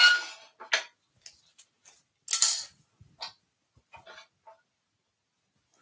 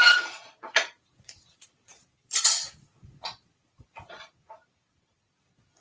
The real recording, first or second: first